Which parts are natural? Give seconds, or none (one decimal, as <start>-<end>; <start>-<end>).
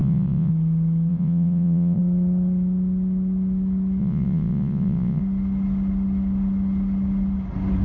0.5-1.1; 2.0-4.0; 5.2-7.8